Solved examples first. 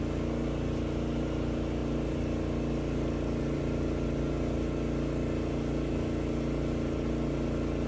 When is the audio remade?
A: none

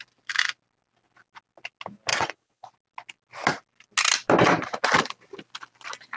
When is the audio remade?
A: 2.1-2.7 (vocoder, WaveNeXt)